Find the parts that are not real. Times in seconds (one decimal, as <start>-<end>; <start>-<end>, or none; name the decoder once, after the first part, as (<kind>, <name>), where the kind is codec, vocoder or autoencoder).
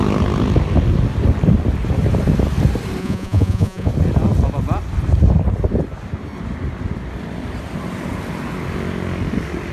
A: 3.0-3.9 (vocoder, Vocos)